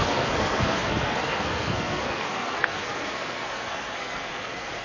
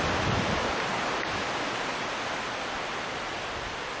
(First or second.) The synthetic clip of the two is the first